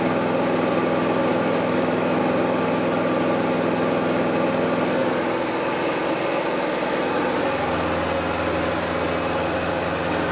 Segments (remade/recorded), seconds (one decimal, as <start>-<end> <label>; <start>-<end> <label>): 0.0-1.3 recorded; 1.3-2.2 remade; 2.2-10.3 recorded